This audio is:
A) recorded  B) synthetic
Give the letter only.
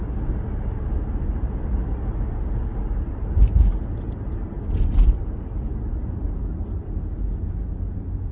A